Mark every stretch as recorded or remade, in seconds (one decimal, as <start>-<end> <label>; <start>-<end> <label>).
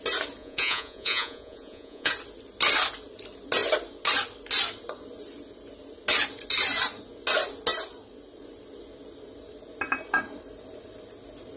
0.0-0.4 recorded; 0.4-2.1 remade; 2.1-11.6 recorded